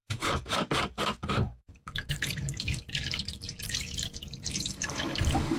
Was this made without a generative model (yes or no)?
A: no